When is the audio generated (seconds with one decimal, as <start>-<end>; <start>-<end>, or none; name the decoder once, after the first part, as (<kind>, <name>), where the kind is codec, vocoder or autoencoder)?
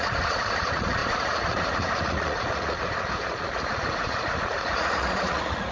0.0-5.7 (vocoder, Vocos)